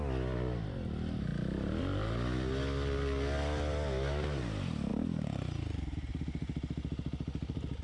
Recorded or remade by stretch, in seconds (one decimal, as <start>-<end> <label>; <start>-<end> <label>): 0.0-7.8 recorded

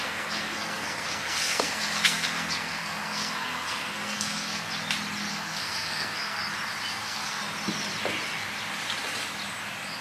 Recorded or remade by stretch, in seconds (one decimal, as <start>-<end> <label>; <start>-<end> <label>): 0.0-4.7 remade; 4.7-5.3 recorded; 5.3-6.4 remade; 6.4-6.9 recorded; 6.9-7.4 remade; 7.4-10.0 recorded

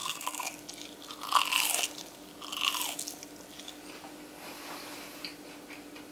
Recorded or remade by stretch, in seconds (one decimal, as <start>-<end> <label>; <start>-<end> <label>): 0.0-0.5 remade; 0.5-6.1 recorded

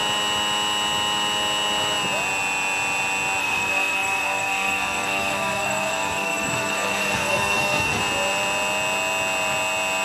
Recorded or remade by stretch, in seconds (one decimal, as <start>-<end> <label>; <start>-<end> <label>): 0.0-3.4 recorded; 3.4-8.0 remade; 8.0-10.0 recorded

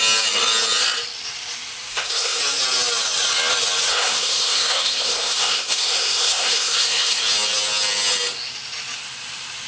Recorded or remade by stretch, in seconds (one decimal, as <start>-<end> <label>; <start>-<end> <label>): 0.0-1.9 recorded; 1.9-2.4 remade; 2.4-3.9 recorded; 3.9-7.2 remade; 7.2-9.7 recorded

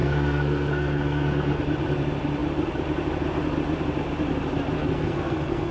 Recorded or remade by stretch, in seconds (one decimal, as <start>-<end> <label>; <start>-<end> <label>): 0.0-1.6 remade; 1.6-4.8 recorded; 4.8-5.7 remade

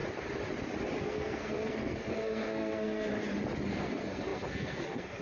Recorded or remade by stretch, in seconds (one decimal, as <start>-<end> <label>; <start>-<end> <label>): 0.0-1.0 recorded; 1.0-3.1 remade; 3.1-3.7 recorded; 3.7-5.2 remade